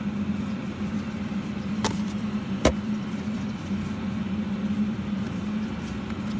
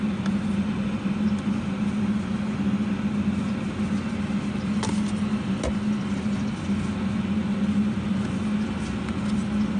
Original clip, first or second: second